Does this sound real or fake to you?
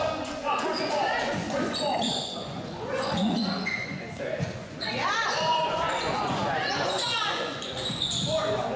fake